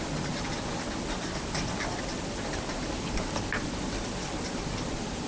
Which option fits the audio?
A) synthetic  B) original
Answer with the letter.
B